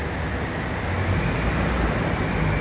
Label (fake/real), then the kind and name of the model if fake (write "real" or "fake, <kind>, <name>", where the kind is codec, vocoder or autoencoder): real